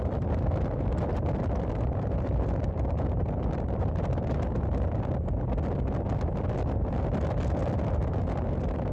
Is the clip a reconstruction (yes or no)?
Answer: no